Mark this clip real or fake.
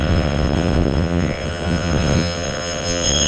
fake